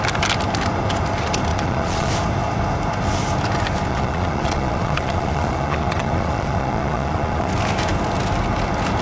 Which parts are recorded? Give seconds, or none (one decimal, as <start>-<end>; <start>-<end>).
0.0-1.5; 2.1-3.9; 7.5-9.0